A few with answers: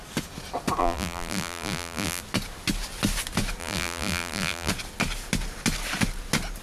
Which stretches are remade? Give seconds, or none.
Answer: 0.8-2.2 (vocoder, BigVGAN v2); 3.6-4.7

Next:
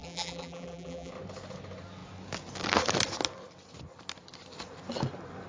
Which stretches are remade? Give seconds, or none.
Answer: 0.0-1.1 (vocoder, BigVGAN v2)

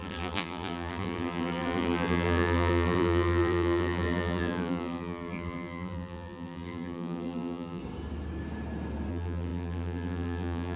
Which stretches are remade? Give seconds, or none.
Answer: 0.0-7.8 (vocoder, BigVGAN v2); 9.1-10.8

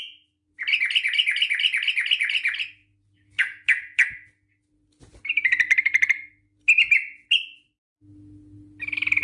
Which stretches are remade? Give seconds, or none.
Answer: none

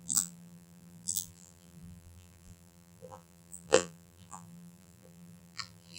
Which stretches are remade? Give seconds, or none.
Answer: 0.0-6.0 (vocoder, BigVGAN v2)